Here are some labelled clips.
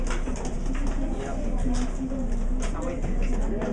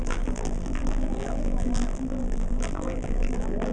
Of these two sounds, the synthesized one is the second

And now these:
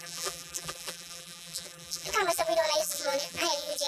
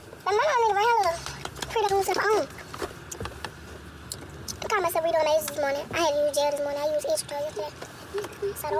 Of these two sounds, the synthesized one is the first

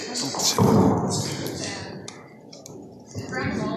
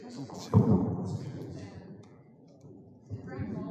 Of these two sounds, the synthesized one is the second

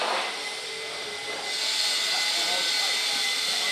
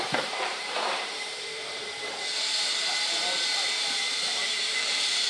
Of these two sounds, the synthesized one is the second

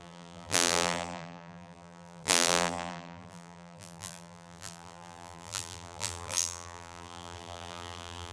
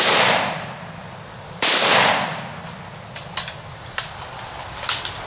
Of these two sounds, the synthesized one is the first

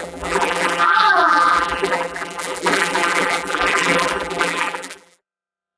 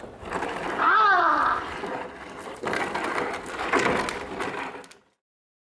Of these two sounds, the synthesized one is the first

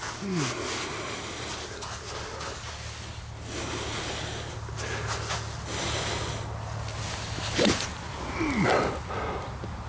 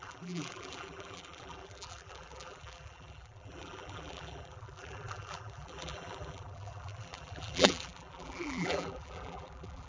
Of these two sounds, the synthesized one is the second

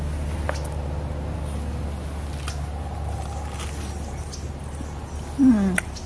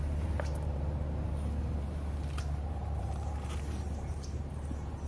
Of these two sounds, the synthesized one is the second